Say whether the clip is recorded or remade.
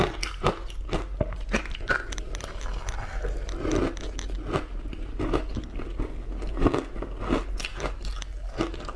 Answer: recorded